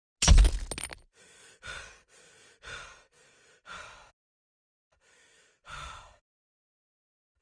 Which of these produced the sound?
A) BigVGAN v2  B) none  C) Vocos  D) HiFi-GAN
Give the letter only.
B